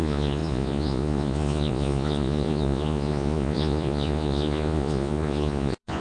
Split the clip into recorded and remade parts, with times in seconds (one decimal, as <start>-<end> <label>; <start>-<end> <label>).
0.0-6.0 remade